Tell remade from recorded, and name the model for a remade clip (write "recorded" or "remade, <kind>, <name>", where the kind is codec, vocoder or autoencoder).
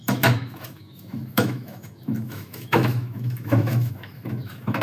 remade, autoencoder, DAC-VAE